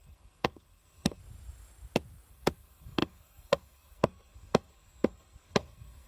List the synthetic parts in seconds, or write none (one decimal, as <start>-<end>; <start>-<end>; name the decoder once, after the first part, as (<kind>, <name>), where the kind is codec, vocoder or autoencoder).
0.0-1.2 (codec, SNAC); 2.3-6.1

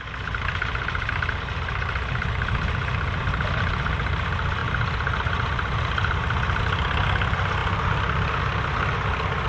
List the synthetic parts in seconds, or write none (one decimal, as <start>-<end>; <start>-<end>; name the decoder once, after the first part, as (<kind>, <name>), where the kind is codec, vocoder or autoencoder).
none

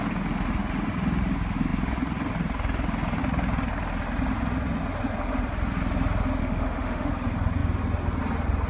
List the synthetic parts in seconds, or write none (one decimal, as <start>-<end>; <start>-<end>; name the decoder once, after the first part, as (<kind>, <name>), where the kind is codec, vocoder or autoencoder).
6.4-7.1 (autoencoder, DAC-VAE)

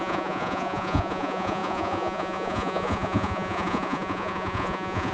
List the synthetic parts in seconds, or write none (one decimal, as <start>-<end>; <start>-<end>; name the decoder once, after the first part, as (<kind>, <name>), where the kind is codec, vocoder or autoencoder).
0.0-5.1 (vocoder, Vocos)

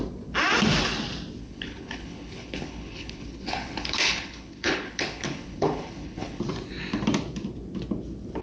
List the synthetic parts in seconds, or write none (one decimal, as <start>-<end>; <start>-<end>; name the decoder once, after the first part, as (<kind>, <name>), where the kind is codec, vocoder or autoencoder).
1.4-6.4 (codec, HILCodec)